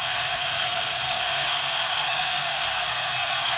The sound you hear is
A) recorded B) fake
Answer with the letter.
B